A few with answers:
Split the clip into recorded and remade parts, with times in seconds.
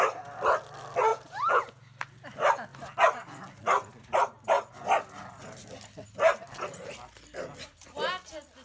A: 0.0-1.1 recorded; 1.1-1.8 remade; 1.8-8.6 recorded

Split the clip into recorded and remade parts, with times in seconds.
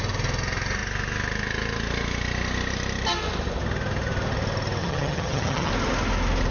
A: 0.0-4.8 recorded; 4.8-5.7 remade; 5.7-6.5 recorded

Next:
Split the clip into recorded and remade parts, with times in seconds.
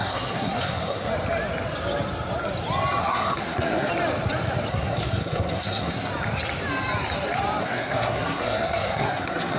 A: 0.0-1.1 remade; 1.1-3.0 recorded; 3.0-3.9 remade; 3.9-4.7 recorded; 4.7-6.1 remade; 6.1-7.6 recorded; 7.6-9.6 remade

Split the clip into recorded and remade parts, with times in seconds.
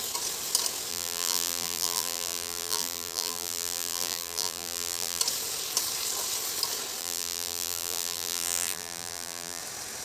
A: 0.0-0.9 recorded; 0.9-5.2 remade; 5.2-7.0 recorded; 7.0-9.6 remade; 9.6-10.0 recorded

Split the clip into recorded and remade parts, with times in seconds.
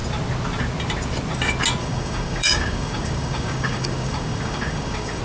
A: 0.0-1.8 recorded; 1.8-5.2 remade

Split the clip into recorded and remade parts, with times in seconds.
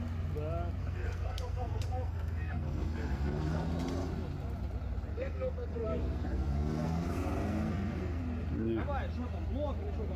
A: 0.0-0.8 recorded; 0.8-3.7 remade; 3.7-5.1 recorded; 5.1-8.2 remade; 8.2-10.2 recorded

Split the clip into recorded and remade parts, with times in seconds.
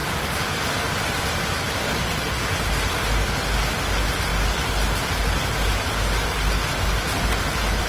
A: 0.0-1.6 remade; 1.6-7.9 recorded